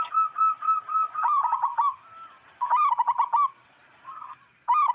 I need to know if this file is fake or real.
real